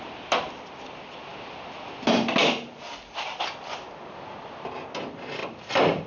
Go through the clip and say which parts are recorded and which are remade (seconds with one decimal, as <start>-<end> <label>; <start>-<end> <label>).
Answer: 0.0-6.1 recorded